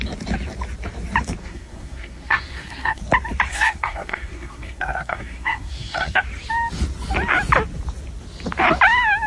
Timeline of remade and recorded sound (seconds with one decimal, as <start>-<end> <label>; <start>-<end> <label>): 0.0-1.4 recorded; 1.4-3.0 remade; 3.0-3.5 recorded; 3.5-6.2 remade; 6.2-9.3 recorded